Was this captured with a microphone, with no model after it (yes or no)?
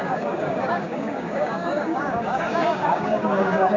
no